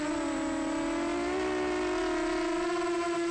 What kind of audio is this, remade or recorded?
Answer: recorded